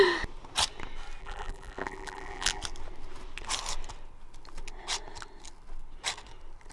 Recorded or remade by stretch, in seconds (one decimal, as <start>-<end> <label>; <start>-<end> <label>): 0.0-1.2 recorded; 1.2-2.6 remade; 2.6-6.7 recorded

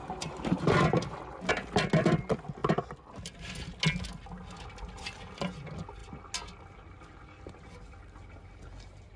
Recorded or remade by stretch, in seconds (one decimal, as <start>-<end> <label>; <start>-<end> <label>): 0.0-1.5 remade; 1.5-9.2 recorded

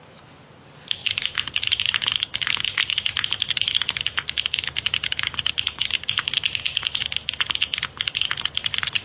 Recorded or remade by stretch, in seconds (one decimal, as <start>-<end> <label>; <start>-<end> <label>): 0.0-1.0 recorded; 1.0-1.8 remade; 1.8-9.0 recorded

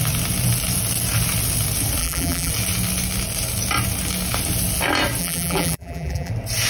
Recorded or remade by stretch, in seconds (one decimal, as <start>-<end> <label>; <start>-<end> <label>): 0.0-2.0 recorded; 2.0-2.5 remade; 2.5-5.2 recorded; 5.2-6.3 remade; 6.3-6.7 recorded

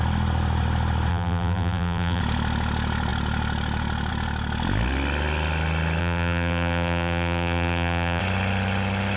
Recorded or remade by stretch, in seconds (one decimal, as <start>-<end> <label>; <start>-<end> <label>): 0.0-1.1 recorded; 1.1-2.2 remade; 2.2-6.0 recorded; 6.0-8.2 remade; 8.2-9.2 recorded

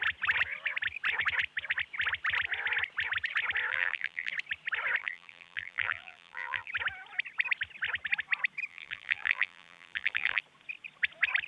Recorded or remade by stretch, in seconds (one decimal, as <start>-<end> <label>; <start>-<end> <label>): 0.0-3.7 recorded; 3.7-4.3 remade; 4.3-5.0 recorded; 5.0-6.7 remade; 6.7-8.7 recorded; 8.7-10.4 remade; 10.4-11.5 recorded

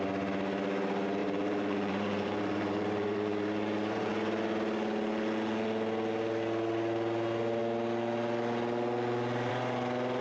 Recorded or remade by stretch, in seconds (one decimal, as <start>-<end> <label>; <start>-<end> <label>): 0.0-1.2 recorded; 1.2-4.1 remade; 4.1-10.2 recorded